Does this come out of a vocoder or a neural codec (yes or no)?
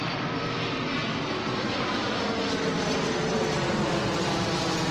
no